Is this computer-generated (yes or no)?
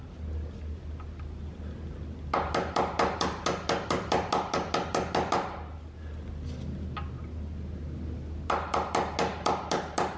no